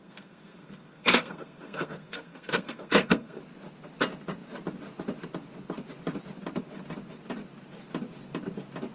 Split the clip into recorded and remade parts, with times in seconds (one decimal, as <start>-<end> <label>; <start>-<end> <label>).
0.0-3.4 remade; 3.4-8.9 recorded